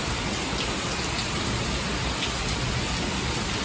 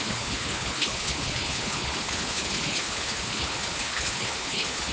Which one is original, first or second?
first